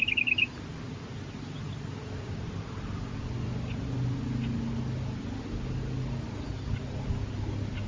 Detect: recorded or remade recorded